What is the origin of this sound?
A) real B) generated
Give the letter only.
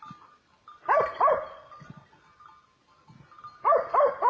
A